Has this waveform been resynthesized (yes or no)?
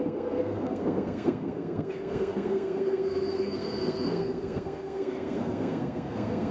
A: yes